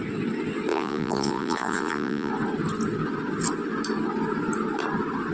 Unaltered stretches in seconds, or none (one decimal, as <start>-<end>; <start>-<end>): 0.0-0.7; 2.3-5.3